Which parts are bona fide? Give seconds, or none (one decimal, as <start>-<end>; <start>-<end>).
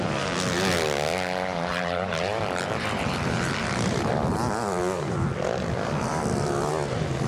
0.0-1.7; 4.1-7.3